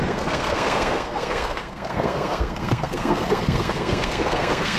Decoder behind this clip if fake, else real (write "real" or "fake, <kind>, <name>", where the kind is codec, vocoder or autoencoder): fake, codec, SNAC